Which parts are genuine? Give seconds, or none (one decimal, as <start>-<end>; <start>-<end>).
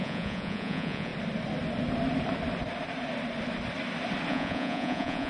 1.1-4.3